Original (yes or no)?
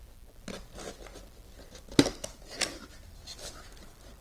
yes